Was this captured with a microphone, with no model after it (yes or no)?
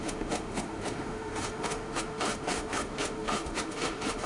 no